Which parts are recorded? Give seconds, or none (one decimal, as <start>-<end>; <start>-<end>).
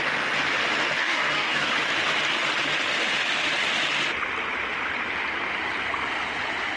0.0-1.0; 1.7-6.8